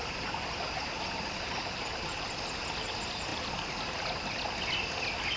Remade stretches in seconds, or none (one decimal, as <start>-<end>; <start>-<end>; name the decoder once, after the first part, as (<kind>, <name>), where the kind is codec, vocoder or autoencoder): none